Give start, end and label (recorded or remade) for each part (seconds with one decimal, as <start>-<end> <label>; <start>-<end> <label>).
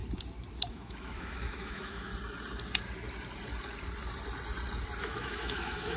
0.0-0.7 recorded; 0.7-2.1 remade; 2.1-5.0 recorded; 5.0-6.0 remade